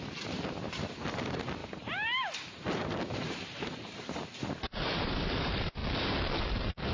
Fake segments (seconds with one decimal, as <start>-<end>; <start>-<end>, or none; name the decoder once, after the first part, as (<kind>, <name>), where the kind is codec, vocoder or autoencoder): 0.0-5.8 (vocoder, BigVGAN v2); 6.4-6.9